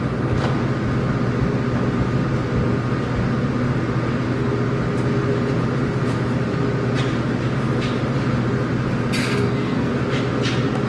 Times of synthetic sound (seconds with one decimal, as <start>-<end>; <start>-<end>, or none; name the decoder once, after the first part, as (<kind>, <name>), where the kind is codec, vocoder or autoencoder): 9.2-9.9 (codec, SNAC)